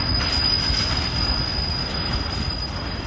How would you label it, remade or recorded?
recorded